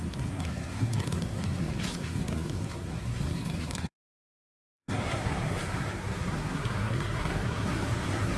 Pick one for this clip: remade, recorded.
remade